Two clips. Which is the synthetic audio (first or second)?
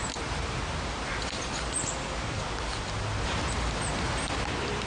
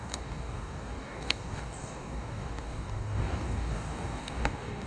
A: second